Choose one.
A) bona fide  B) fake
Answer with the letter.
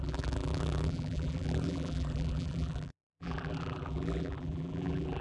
B